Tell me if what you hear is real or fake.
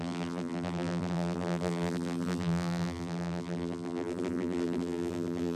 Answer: fake